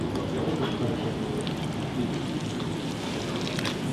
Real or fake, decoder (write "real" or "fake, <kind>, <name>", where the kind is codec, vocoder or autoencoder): real